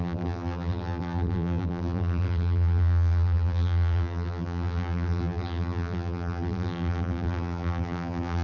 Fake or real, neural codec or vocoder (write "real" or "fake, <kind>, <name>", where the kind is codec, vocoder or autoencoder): fake, vocoder, BigVGAN v2